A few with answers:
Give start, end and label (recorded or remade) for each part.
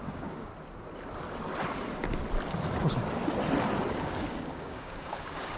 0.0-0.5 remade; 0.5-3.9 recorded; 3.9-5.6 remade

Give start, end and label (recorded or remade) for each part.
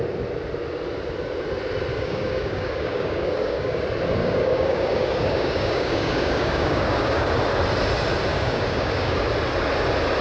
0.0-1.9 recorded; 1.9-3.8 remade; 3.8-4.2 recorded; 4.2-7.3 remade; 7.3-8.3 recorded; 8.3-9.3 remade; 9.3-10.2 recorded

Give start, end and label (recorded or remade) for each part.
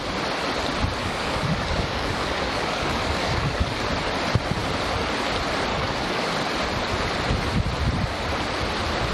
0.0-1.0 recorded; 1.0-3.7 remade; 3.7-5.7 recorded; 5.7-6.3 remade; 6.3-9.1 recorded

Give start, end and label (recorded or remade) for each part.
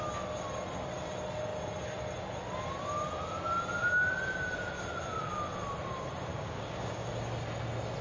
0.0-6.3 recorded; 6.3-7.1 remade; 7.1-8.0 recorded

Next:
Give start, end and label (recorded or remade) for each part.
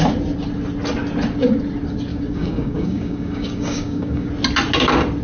0.0-2.1 recorded; 2.1-4.3 remade; 4.3-5.2 recorded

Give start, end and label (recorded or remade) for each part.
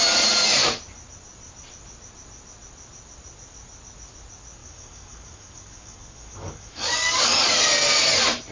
0.0-4.6 recorded; 4.6-7.5 remade; 7.5-8.5 recorded